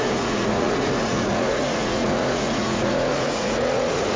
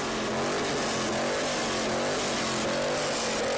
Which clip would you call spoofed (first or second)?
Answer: first